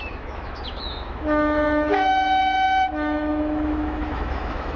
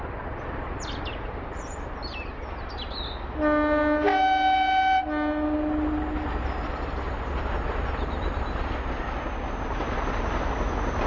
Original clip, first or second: second